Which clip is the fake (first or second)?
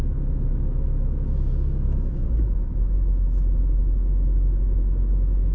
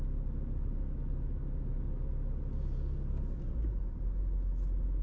first